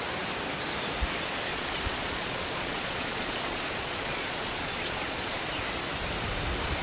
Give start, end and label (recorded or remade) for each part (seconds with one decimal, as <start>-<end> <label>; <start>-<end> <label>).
0.0-1.5 recorded; 1.5-5.4 remade; 5.4-6.8 recorded